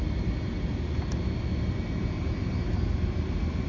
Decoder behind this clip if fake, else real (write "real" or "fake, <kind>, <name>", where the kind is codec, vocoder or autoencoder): real